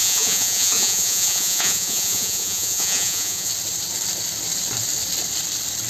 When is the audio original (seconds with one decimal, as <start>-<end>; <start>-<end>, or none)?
3.5-5.9